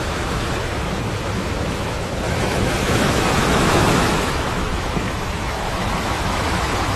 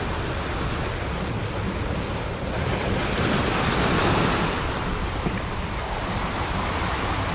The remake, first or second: first